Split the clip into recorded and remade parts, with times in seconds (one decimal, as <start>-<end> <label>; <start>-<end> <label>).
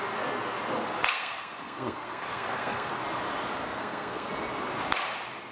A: 0.0-1.0 recorded; 1.0-2.9 remade; 2.9-3.6 recorded; 3.6-4.3 remade; 4.3-5.5 recorded